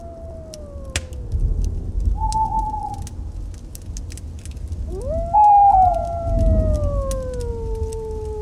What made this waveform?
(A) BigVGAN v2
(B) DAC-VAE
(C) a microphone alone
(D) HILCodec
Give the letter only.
C